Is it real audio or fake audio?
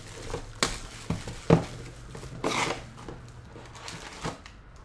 real